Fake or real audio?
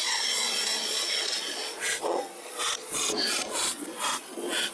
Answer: fake